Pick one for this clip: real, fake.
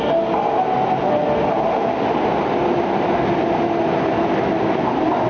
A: real